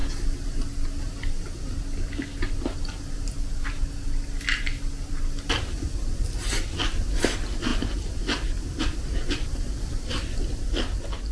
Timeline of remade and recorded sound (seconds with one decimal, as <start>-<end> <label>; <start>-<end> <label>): 0.0-11.3 recorded